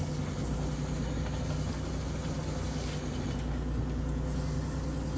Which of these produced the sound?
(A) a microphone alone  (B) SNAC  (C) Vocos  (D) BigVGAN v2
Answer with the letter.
A